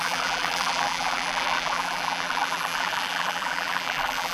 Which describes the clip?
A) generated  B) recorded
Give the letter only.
A